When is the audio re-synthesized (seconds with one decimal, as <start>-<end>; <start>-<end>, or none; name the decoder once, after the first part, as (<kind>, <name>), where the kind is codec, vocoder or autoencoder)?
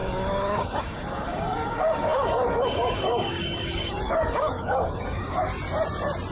0.0-5.5 (codec, DAC)